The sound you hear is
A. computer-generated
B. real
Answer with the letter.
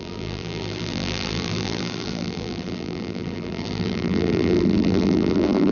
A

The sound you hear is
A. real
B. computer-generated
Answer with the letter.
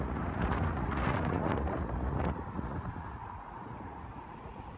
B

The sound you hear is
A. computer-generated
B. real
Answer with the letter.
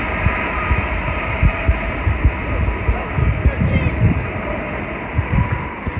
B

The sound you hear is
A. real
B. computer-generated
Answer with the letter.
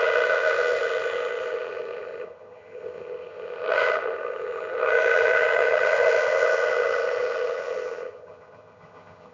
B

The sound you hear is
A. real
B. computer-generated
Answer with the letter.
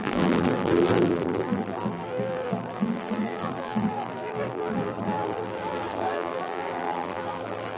B